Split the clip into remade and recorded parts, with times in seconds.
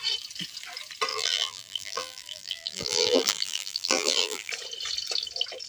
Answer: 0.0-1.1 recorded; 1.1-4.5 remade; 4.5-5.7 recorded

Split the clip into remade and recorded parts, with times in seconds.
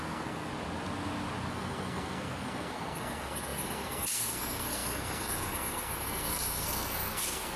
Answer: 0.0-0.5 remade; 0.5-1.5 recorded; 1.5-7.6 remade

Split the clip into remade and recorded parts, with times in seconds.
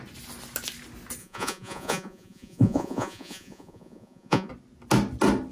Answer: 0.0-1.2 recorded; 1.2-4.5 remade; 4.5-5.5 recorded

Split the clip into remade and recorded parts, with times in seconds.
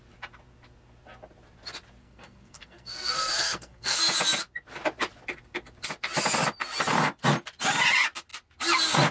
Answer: 0.0-2.0 recorded; 2.0-4.0 remade; 4.0-9.1 recorded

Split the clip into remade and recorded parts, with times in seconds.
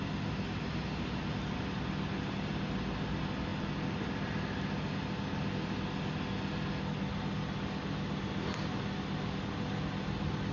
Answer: 0.0-10.5 recorded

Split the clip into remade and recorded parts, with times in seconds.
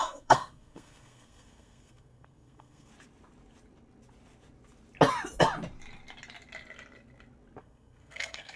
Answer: 0.0-2.9 remade; 2.9-7.6 recorded; 7.6-8.6 remade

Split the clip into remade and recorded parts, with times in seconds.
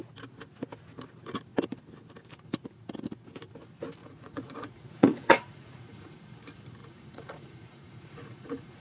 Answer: 0.0-4.0 recorded; 4.0-6.2 remade; 6.2-6.8 recorded; 6.8-8.8 remade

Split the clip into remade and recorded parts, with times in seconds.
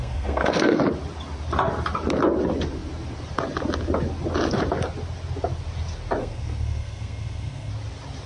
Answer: 0.0-0.8 remade; 0.8-6.2 recorded; 6.2-7.7 remade; 7.7-8.3 recorded